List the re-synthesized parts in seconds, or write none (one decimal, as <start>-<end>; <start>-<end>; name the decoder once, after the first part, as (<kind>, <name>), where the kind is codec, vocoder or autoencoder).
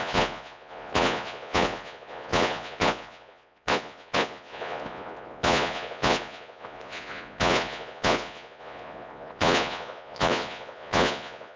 0.0-11.6 (vocoder, Vocos)